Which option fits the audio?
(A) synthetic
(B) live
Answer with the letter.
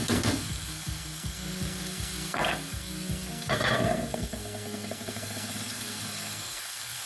A